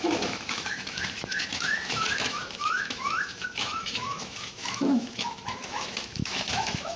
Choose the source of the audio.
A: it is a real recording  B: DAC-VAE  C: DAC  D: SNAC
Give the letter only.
B